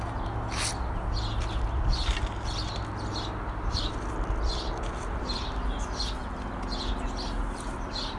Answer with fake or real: real